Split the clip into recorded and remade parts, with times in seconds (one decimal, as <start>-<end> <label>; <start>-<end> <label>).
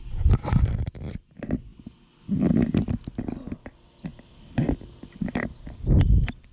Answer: 0.0-6.5 recorded